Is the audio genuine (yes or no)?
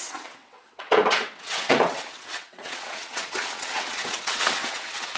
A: no